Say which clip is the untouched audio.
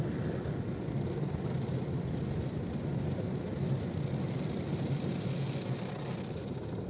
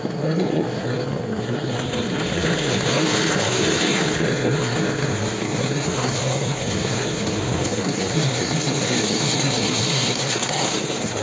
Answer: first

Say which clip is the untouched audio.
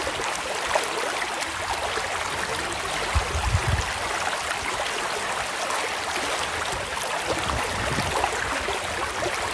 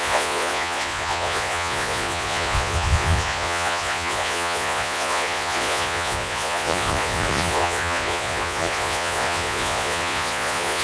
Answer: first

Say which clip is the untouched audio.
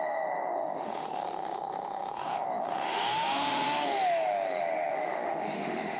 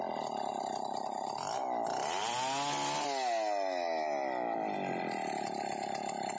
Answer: second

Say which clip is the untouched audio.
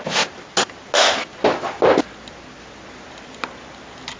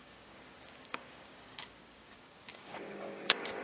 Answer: first